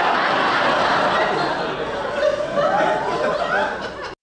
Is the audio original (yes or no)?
yes